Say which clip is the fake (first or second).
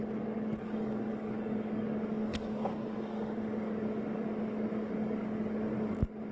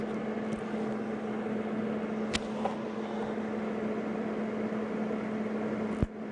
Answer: first